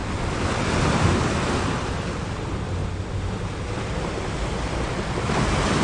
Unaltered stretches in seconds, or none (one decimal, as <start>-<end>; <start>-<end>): 0.0-5.8